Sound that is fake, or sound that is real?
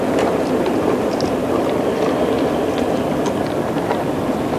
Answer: real